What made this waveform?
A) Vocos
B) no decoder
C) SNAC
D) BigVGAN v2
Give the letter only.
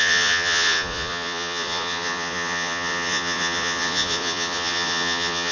A